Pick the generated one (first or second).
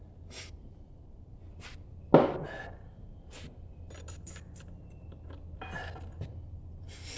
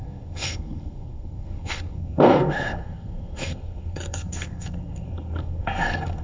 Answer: second